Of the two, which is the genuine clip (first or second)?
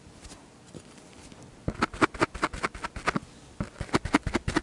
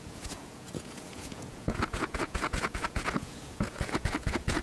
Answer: first